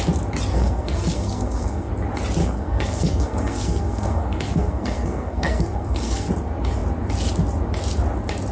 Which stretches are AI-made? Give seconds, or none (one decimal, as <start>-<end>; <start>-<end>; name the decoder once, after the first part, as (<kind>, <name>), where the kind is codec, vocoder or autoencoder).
0.5-1.9 (codec, SNAC); 2.4-6.3